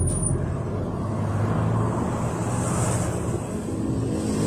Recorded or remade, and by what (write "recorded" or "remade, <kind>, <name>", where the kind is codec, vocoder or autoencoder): recorded